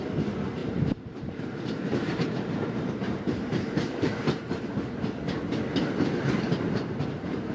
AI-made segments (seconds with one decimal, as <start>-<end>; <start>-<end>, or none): 0.6-4.5